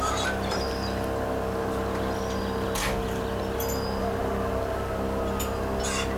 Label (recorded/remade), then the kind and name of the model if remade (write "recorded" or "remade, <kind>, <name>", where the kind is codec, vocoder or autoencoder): recorded